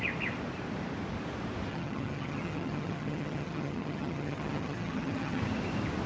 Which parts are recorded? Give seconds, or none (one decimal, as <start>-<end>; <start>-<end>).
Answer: 0.0-1.7; 5.4-6.1